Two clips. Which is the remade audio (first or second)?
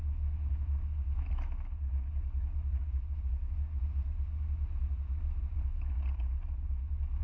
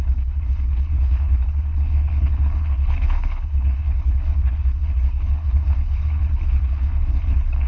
second